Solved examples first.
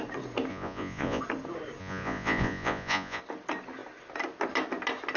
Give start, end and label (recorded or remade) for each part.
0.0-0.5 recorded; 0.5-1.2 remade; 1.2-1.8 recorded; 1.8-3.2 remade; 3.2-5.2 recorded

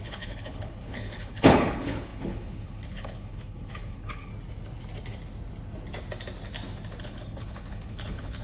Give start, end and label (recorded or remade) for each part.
0.0-4.3 remade; 4.3-7.0 recorded; 7.0-8.4 remade

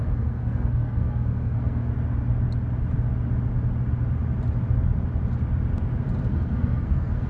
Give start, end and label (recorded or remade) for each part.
0.0-1.9 remade; 1.9-6.3 recorded; 6.3-7.3 remade

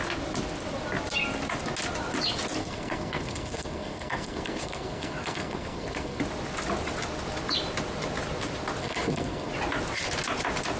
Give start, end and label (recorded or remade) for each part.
0.0-2.6 recorded; 2.6-6.2 remade; 6.2-8.8 recorded; 8.8-9.5 remade; 9.5-10.8 recorded